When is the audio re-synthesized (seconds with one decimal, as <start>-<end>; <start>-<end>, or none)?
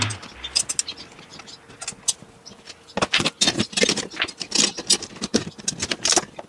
none